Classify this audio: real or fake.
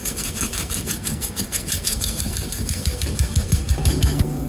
fake